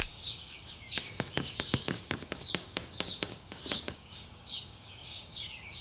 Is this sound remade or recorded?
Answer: remade